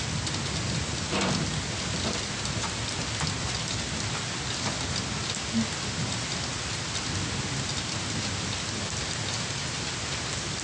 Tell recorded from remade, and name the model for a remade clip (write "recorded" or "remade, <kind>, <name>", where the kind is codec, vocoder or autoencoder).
recorded